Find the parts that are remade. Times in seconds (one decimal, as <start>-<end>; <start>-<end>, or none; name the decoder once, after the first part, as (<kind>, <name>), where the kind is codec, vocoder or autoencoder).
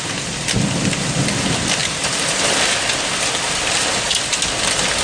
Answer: 1.8-2.3 (vocoder, BigVGAN v2)